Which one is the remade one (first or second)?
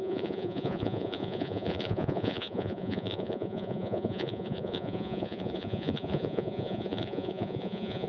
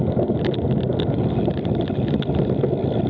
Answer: first